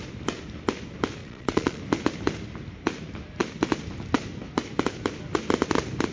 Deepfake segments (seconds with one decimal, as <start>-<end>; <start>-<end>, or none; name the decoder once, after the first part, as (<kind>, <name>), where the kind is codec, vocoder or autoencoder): 1.2-1.8 (vocoder, Vocos)